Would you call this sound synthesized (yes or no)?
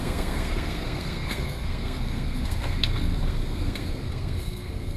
yes